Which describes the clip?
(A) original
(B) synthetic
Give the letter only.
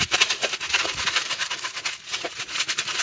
B